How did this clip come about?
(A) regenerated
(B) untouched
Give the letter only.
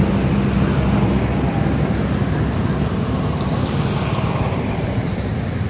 B